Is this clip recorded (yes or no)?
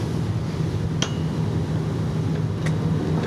yes